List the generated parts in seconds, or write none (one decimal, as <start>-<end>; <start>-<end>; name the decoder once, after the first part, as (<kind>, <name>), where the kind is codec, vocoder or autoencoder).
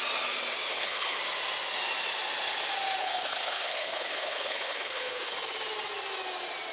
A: 0.7-1.2 (codec, HILCodec); 3.0-5.3